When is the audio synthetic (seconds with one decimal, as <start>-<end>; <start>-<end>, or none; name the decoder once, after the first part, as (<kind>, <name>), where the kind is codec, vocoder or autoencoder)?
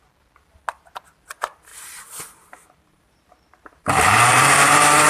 1.7-5.1 (vocoder, BigVGAN v2)